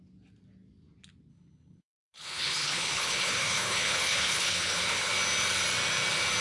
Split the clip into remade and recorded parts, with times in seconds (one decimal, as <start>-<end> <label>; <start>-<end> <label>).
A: 0.0-1.3 recorded; 1.3-5.1 remade; 5.1-6.4 recorded